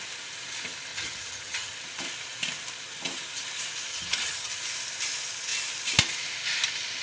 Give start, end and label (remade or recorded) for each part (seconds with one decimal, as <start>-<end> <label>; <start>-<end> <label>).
0.0-0.9 recorded; 0.9-1.7 remade; 1.7-3.9 recorded; 3.9-4.5 remade; 4.5-7.0 recorded